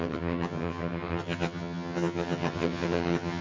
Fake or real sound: fake